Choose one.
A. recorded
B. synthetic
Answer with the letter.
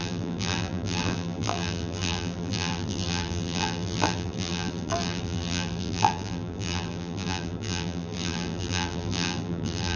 B